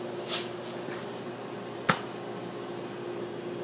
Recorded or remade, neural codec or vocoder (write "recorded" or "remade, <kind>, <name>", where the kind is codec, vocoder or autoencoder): recorded